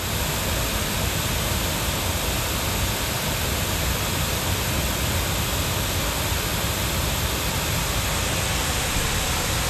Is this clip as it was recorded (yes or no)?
yes